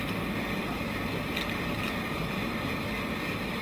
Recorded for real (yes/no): yes